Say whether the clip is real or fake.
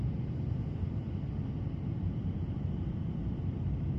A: real